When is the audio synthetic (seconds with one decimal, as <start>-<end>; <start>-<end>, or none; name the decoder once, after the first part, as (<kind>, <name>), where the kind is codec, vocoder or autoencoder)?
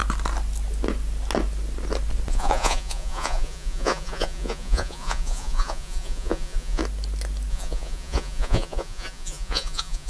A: 2.3-6.8 (vocoder, Vocos); 7.5-10.1